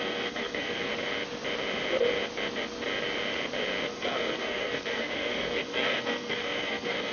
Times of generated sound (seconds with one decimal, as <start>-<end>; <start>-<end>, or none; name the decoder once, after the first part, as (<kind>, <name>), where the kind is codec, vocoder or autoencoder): 0.0-0.9 (codec, SNAC); 3.9-7.1